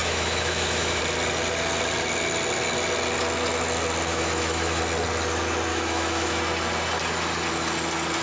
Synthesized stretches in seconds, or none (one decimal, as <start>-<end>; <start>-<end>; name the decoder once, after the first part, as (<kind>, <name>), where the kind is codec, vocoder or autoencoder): 0.0-1.0 (autoencoder, DAC-VAE); 4.1-4.8; 5.7-6.4